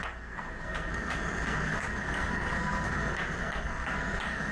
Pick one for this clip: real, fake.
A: fake